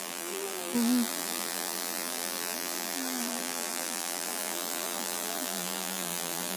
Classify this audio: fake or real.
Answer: fake